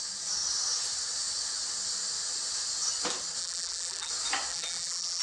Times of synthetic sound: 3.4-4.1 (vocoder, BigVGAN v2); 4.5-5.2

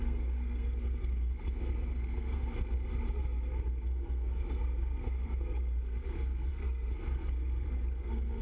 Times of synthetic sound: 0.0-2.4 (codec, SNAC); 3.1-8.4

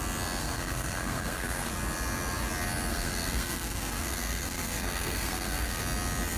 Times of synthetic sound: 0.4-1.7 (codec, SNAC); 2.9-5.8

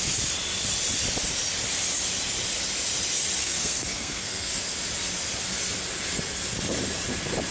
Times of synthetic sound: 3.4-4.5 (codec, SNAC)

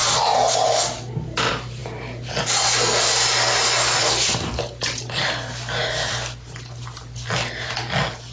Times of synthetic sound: none

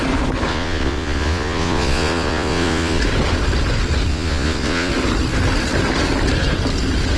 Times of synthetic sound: 0.5-3.0 (vocoder, Vocos); 4.1-4.9

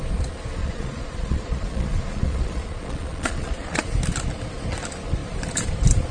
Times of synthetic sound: 0.6-3.8 (vocoder, Vocos)